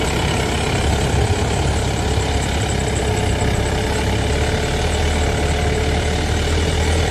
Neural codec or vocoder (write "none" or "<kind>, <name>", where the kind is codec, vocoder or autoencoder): none